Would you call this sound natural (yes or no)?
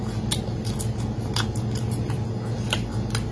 yes